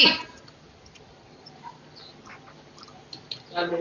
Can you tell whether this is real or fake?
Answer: real